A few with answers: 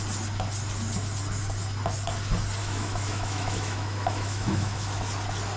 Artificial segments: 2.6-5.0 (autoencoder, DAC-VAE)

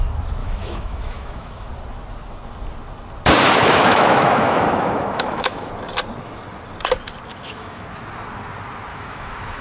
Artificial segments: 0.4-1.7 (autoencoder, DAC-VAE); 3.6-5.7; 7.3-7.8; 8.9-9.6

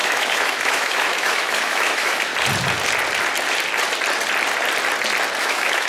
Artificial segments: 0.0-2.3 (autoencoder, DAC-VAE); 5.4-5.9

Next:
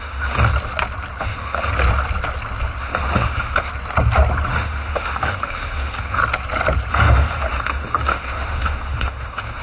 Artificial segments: 0.0-0.5 (autoencoder, DAC-VAE); 1.2-1.7; 2.8-3.7; 4.5-6.2; 6.9-9.6

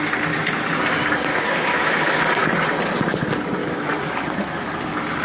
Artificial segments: 1.3-2.2 (autoencoder, DAC-VAE); 3.6-4.2

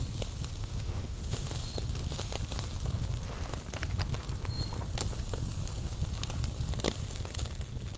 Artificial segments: 0.6-1.5 (autoencoder, DAC-VAE)

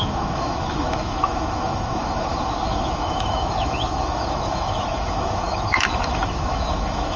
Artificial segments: 0.0-7.2 (autoencoder, DAC-VAE)

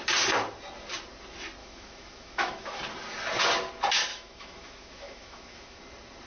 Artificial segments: 1.6-2.8 (autoencoder, DAC-VAE); 4.1-5.8